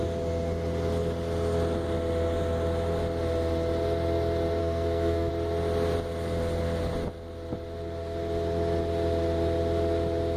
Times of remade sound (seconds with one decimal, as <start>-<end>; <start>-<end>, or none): 4.6-5.3